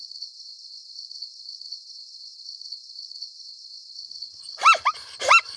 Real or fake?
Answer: real